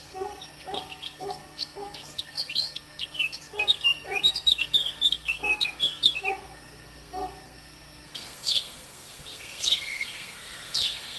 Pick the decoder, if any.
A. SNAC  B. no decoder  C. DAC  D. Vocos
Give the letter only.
A